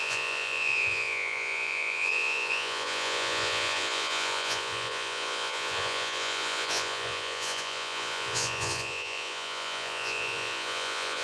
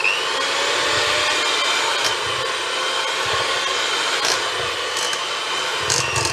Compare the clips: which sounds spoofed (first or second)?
first